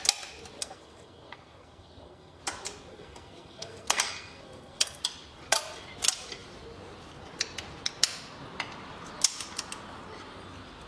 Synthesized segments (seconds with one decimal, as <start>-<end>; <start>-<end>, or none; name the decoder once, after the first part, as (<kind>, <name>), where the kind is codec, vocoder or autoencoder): 0.6-2.4 (codec, SNAC); 2.9-5.0